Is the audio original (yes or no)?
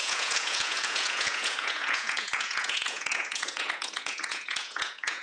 no